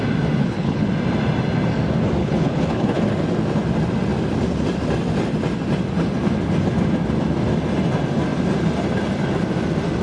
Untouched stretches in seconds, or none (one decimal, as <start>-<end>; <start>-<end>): 0.0-0.4; 0.9-2.2; 3.0-10.0